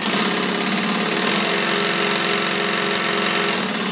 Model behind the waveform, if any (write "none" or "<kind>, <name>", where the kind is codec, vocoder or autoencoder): none